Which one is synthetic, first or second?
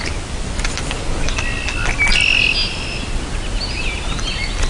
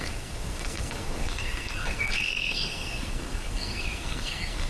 second